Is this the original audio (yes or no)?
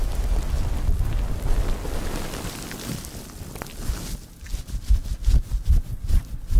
yes